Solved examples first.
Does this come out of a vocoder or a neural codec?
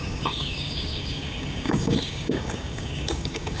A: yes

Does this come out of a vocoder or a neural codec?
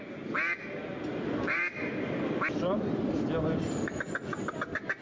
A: no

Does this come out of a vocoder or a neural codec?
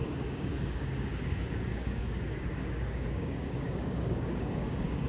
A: yes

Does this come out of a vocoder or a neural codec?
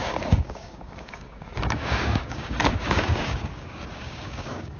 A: yes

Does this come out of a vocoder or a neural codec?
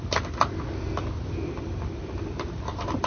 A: no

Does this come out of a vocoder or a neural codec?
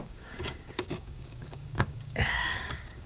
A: yes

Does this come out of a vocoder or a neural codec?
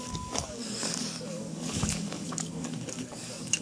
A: yes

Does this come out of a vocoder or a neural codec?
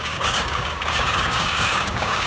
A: yes